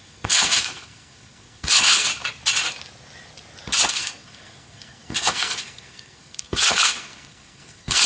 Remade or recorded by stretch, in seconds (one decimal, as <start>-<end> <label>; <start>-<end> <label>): 0.0-2.1 remade; 2.1-3.9 recorded; 3.9-8.1 remade